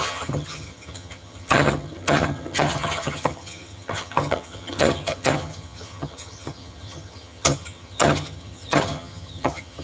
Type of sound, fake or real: fake